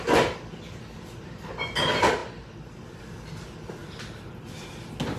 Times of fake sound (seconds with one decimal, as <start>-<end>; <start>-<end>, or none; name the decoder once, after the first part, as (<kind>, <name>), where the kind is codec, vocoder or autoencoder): none